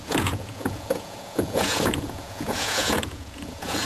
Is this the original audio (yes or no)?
no